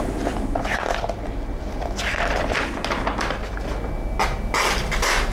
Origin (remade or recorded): recorded